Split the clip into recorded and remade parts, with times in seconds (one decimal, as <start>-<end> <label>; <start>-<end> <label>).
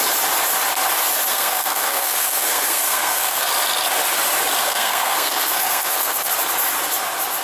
0.0-1.3 recorded; 1.3-3.5 remade; 3.5-4.6 recorded; 4.6-6.3 remade; 6.3-7.4 recorded